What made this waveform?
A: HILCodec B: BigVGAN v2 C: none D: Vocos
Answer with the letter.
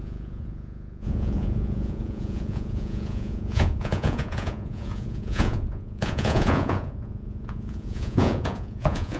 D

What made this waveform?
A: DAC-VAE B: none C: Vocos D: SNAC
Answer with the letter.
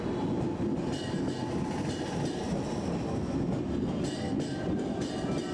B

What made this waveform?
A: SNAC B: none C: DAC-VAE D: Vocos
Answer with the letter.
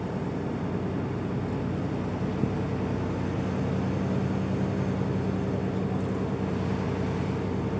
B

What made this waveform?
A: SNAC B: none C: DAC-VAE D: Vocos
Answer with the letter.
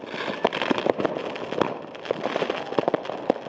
B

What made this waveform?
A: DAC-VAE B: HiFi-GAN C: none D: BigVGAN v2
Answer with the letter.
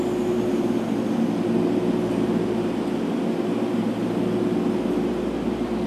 C